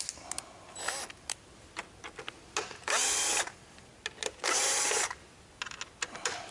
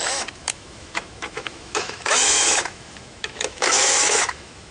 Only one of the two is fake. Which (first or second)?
second